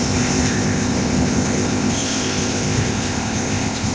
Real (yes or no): no